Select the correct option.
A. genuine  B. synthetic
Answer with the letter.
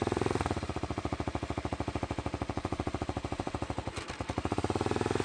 B